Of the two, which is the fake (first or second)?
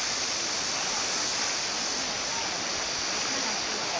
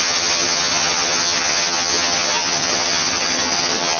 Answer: second